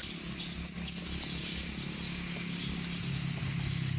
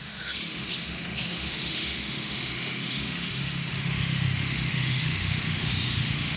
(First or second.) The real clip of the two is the first